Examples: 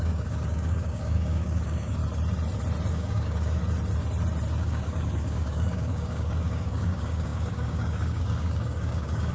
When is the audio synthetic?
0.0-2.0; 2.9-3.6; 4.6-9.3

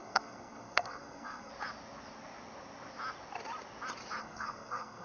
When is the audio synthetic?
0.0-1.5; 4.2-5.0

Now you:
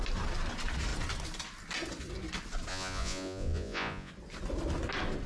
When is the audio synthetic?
2.7-4.1

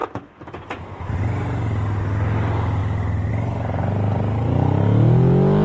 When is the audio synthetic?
0.0-1.1

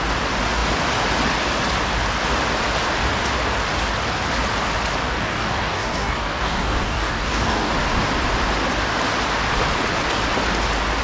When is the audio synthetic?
5.0-7.7

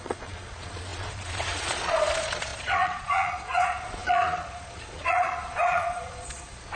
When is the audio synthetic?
0.0-6.8

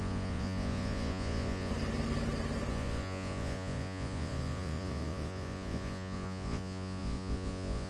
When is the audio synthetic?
0.0-1.7; 2.7-7.9

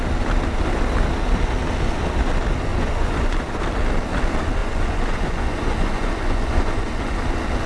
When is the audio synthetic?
2.7-3.6; 4.6-7.2